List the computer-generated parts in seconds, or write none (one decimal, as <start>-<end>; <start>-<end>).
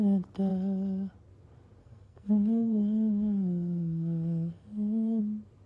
1.8-5.2